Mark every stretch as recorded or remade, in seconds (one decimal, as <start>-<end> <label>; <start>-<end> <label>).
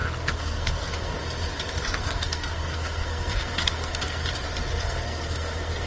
0.0-1.2 remade; 1.2-1.8 recorded; 1.8-4.2 remade; 4.2-4.8 recorded; 4.8-5.9 remade